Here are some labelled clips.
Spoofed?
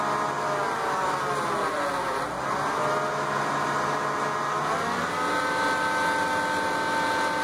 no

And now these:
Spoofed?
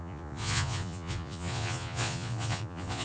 yes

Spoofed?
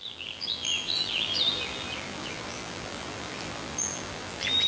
yes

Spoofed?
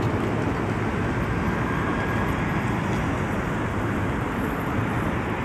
no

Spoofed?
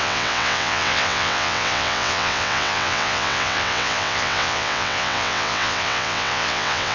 yes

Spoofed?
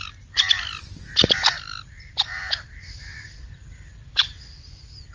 yes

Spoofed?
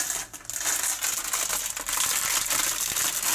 no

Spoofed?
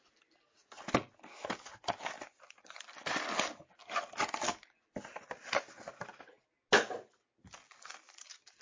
no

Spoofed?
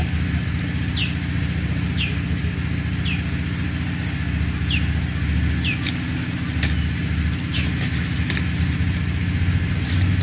no